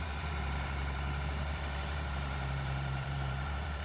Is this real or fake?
fake